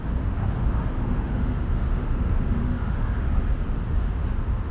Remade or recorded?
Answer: remade